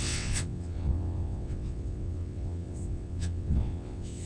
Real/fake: fake